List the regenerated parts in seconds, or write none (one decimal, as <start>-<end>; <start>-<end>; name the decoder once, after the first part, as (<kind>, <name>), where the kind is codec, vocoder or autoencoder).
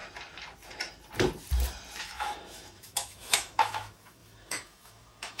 2.0-5.4 (autoencoder, DAC-VAE)